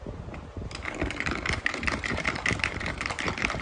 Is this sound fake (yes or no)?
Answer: yes